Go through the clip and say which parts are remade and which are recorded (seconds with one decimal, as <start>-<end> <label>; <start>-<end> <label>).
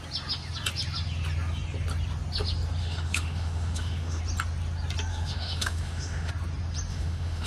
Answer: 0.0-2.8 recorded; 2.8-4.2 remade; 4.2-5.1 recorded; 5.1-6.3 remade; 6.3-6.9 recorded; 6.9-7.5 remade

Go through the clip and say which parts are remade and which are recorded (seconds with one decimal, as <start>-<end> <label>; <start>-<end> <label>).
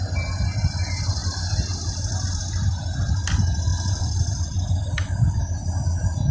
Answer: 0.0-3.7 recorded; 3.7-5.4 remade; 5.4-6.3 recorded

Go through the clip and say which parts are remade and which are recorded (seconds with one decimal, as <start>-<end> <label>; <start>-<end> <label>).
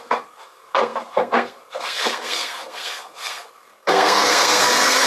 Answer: 0.0-5.1 remade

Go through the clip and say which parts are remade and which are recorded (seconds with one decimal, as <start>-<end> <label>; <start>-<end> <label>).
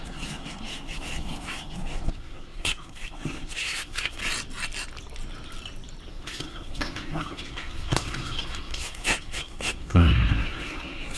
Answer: 0.0-4.2 remade; 4.2-6.1 recorded; 6.1-11.2 remade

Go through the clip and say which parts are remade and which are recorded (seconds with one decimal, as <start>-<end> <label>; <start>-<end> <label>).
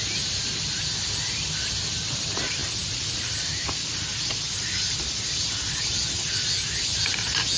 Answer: 0.0-7.6 recorded